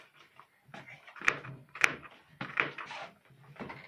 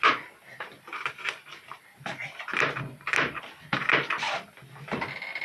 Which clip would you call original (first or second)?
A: first